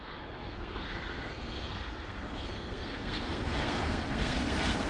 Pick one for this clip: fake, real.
fake